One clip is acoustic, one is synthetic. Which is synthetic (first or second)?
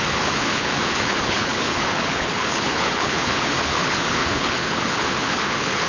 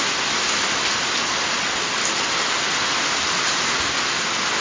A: first